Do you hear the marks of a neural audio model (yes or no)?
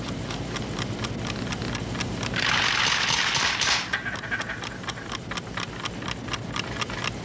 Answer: no